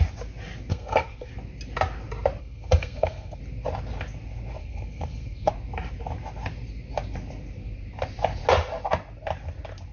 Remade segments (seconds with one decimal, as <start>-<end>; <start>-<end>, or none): 0.7-1.3; 2.4-3.4; 4.6-5.5